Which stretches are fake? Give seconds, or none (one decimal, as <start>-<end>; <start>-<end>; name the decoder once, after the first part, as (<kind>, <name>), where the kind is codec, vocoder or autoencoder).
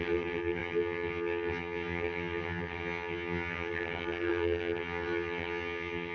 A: 0.0-6.1 (vocoder, HiFi-GAN)